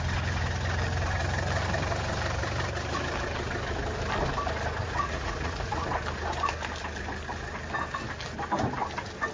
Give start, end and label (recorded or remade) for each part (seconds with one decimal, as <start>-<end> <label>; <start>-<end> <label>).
0.0-4.8 recorded; 4.8-5.9 remade; 5.9-9.3 recorded

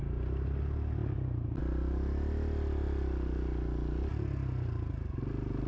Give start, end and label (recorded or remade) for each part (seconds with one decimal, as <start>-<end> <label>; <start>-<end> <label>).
0.0-5.7 recorded

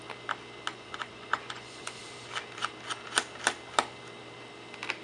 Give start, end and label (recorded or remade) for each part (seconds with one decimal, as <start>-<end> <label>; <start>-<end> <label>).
0.0-0.7 recorded; 0.7-2.0 remade; 2.0-5.0 recorded

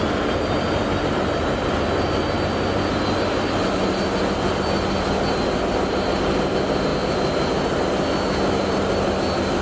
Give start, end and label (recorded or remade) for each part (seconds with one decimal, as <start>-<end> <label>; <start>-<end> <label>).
0.0-9.6 recorded

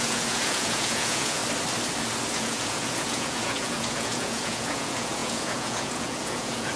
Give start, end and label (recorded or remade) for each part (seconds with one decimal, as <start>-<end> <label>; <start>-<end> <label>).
0.0-1.4 remade; 1.4-2.3 recorded; 2.3-6.8 remade

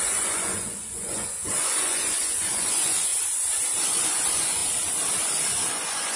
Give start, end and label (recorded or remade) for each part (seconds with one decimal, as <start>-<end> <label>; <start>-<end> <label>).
0.0-3.1 remade; 3.1-3.8 recorded; 3.8-4.6 remade; 4.6-5.5 recorded; 5.5-6.2 remade

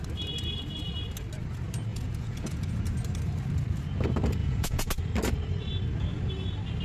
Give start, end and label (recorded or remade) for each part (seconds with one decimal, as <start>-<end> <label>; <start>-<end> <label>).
0.0-1.9 recorded; 1.9-2.9 remade; 2.9-4.4 recorded; 4.4-4.9 remade; 4.9-6.8 recorded

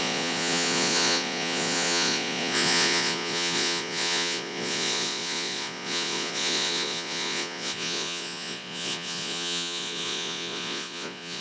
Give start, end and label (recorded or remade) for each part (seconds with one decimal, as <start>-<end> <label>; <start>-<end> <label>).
0.0-11.4 remade